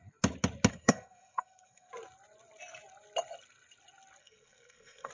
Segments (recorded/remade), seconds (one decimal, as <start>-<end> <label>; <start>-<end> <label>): 0.0-0.7 recorded; 0.7-1.9 remade; 1.9-4.2 recorded; 4.2-5.1 remade